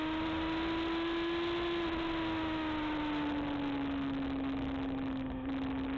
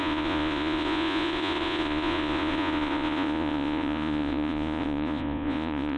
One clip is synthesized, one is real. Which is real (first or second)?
first